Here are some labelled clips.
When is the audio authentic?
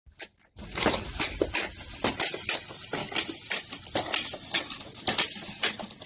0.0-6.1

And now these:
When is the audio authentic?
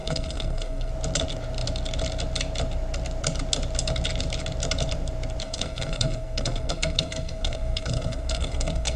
0.9-5.4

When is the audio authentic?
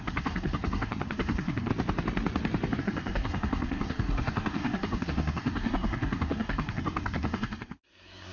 1.7-2.8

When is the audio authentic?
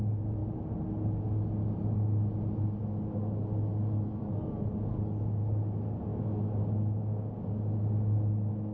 0.0-6.1; 7.0-8.7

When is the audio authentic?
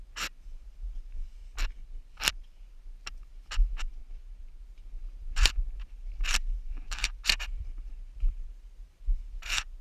1.4-2.3; 4.0-4.6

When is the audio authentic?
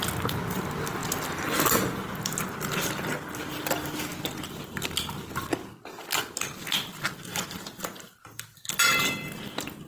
0.0-7.3; 8.9-9.9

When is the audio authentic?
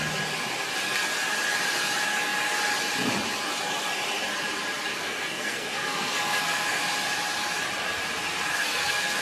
0.0-4.9; 6.8-8.5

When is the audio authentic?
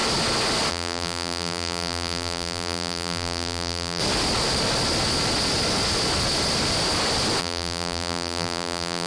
0.0-0.7; 4.0-7.4